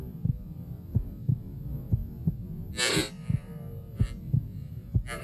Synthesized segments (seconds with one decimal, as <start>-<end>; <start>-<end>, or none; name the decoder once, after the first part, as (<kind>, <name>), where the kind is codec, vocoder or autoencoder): none